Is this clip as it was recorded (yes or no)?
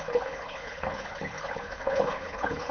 no